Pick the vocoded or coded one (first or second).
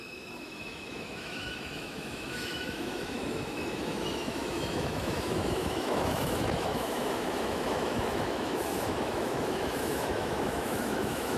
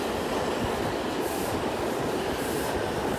first